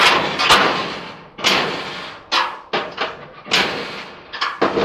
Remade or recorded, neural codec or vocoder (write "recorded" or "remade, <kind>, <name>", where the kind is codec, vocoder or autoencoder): recorded